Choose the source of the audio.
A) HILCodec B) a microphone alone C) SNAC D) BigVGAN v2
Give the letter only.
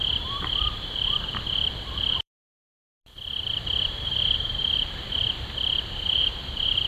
D